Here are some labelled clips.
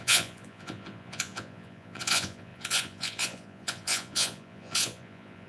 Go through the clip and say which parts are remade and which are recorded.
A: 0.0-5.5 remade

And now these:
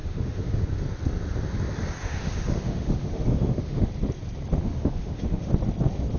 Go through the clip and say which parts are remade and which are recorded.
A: 0.0-0.6 remade; 0.6-2.0 recorded; 2.0-3.9 remade; 3.9-4.6 recorded; 4.6-5.5 remade; 5.5-6.2 recorded

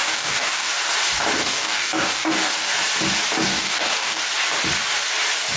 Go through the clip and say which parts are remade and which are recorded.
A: 0.0-0.7 remade; 0.7-1.4 recorded; 1.4-2.5 remade; 2.5-3.5 recorded; 3.5-4.2 remade; 4.2-5.6 recorded

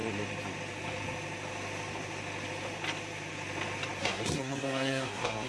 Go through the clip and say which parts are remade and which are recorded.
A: 0.0-4.0 recorded; 4.0-5.5 remade

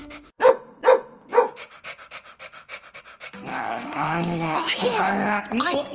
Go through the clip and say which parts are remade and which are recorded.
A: 0.0-0.5 remade; 0.5-3.5 recorded; 3.5-5.4 remade; 5.4-5.9 recorded

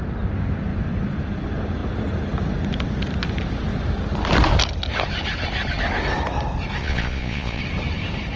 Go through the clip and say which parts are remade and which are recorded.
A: 0.0-6.8 recorded; 6.8-7.6 remade; 7.6-8.4 recorded

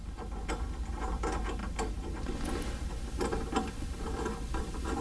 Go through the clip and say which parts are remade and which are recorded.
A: 0.0-5.0 recorded